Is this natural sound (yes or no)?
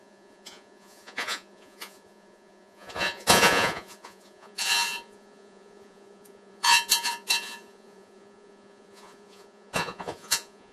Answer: no